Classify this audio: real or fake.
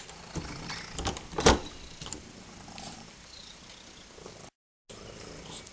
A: real